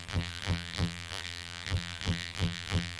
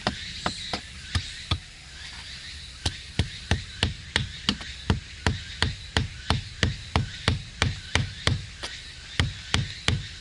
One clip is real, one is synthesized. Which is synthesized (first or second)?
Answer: first